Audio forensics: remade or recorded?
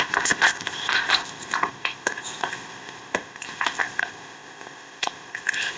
remade